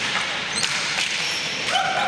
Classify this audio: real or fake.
fake